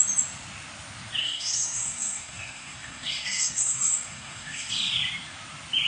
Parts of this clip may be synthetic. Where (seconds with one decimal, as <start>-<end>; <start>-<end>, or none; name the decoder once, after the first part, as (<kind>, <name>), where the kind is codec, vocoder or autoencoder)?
1.2-4.7 (codec, SNAC)